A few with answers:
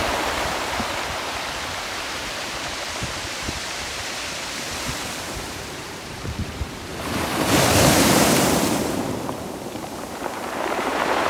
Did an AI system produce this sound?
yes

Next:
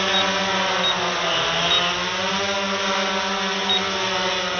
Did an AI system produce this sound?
no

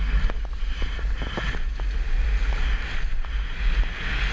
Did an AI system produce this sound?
no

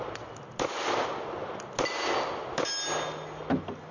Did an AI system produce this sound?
no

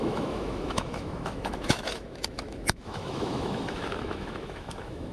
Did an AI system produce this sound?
yes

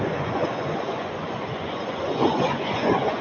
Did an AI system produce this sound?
yes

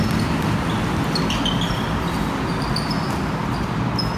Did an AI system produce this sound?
no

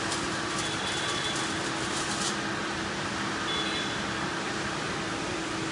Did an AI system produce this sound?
no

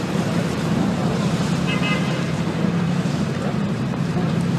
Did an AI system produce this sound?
yes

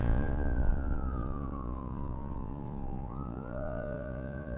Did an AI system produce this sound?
yes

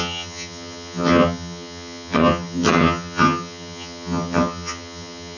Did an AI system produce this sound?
yes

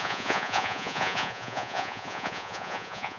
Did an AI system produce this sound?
yes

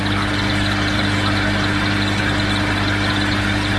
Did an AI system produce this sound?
no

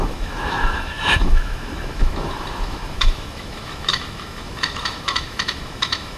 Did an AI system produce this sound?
yes